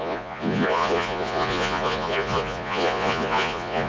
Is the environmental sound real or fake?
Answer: fake